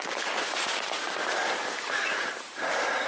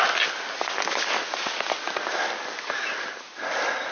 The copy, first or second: first